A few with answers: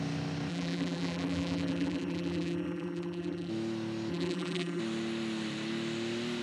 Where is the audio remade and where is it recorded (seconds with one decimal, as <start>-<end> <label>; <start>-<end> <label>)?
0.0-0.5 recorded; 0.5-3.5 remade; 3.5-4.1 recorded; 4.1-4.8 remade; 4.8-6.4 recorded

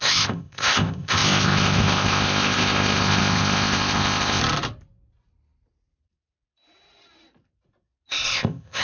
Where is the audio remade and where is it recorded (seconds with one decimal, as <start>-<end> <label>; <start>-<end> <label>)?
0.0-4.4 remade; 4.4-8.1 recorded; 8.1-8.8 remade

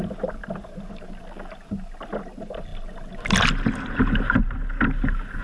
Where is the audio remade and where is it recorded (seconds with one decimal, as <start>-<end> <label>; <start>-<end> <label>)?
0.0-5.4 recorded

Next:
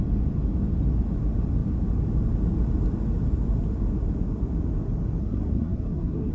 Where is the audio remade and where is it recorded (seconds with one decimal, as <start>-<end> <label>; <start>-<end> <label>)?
0.0-5.2 recorded; 5.2-6.3 remade